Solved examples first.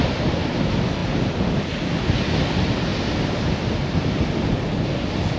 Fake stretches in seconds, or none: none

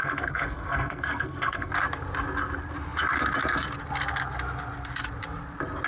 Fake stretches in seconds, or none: 0.0-1.7 (codec, SNAC)

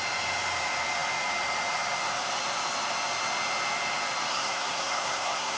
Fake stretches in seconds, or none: 4.3-5.6 (codec, SNAC)

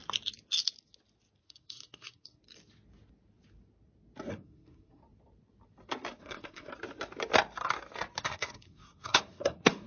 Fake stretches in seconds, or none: 1.4-2.4 (codec, SNAC); 4.3-5.0; 6.2-6.7; 8.2-9.9